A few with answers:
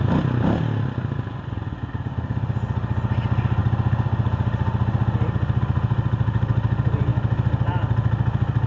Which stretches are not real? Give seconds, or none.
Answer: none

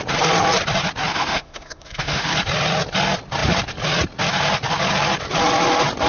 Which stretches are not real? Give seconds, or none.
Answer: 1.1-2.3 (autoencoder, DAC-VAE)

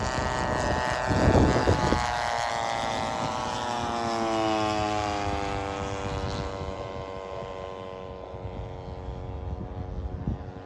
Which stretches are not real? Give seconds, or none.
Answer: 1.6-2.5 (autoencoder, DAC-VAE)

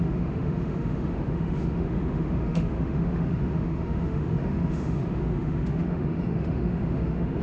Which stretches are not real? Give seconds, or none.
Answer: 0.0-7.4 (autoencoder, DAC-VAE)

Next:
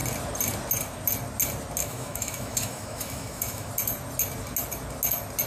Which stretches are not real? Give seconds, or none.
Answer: 1.8-3.7 (autoencoder, DAC-VAE)

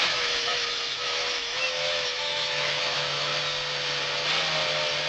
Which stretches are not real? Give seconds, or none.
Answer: 0.0-3.3 (autoencoder, DAC-VAE)

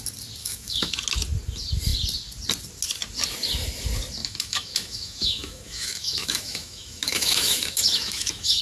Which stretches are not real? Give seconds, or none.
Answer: 0.4-0.9 (autoencoder, DAC-VAE); 4.2-8.6